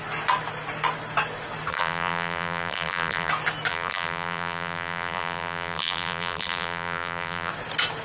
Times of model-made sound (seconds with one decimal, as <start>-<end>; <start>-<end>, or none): 1.7-3.3; 3.7-7.5